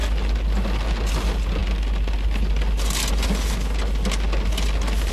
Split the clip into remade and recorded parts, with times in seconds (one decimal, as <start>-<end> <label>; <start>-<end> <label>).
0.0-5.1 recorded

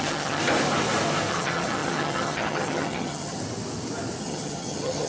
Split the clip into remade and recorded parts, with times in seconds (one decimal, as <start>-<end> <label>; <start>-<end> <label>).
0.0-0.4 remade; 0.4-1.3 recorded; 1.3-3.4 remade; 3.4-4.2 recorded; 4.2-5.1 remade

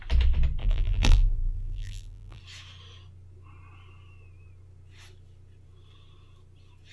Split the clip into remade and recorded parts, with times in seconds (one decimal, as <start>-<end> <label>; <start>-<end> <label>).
0.0-0.6 recorded; 0.6-2.4 remade; 2.4-6.9 recorded